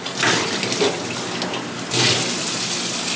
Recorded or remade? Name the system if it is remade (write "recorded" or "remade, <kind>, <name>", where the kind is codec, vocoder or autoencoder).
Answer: recorded